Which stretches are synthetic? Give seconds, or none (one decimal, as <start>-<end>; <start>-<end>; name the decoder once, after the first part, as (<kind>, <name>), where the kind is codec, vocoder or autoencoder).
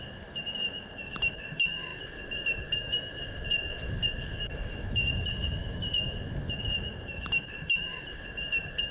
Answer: 0.0-8.9 (autoencoder, DAC-VAE)